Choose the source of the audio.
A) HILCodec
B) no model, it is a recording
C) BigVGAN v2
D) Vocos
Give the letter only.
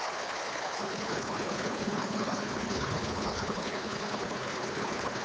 A